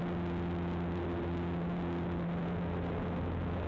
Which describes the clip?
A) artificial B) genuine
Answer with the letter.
B